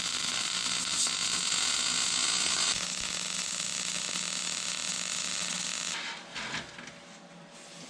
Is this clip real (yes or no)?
yes